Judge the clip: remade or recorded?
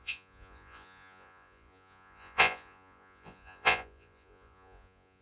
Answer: remade